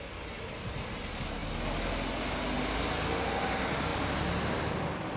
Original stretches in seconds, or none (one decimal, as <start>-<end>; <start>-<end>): 0.0-5.2